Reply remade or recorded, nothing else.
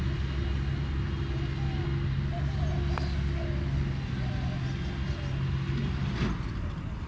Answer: recorded